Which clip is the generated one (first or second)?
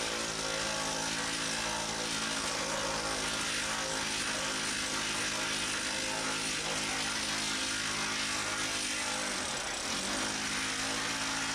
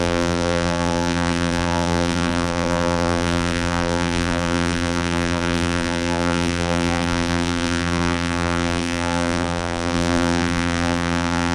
second